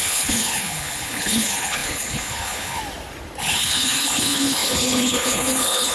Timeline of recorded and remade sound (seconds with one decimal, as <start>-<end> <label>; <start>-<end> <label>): 0.0-2.8 remade; 2.8-3.4 recorded; 3.4-5.9 remade